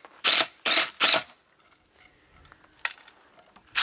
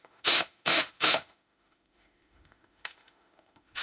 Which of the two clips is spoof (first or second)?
second